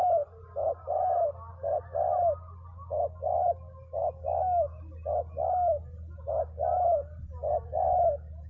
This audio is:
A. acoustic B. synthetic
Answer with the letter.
A